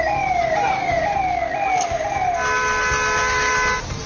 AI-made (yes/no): no